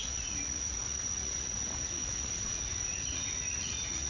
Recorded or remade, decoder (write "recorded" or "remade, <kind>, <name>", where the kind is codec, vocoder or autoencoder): remade, vocoder, Vocos